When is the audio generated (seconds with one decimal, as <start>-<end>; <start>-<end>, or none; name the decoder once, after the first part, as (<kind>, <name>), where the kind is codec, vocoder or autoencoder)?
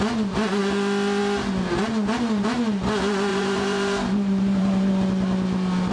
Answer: 3.3-4.9 (vocoder, BigVGAN v2)